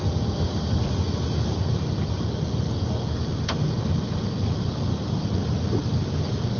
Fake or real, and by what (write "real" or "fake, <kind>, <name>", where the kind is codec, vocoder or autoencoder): real